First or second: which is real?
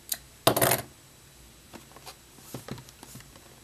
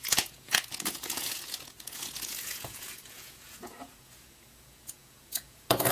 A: first